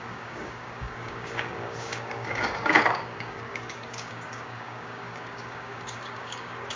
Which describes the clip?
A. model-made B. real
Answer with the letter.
A